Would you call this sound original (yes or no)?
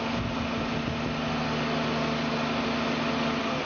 yes